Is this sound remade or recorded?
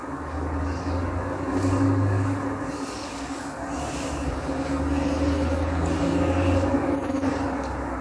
remade